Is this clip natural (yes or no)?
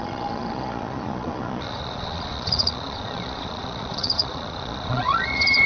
no